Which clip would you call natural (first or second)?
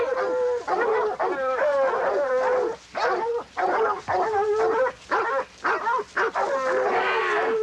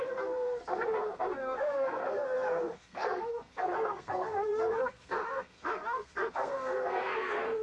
first